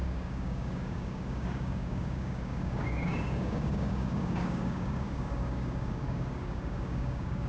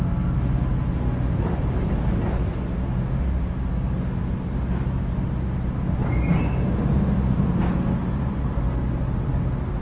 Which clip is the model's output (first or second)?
first